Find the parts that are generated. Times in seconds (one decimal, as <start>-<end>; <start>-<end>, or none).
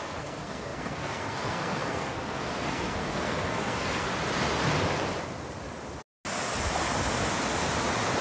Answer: 0.0-4.1